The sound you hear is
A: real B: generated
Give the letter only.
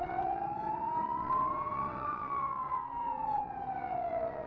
B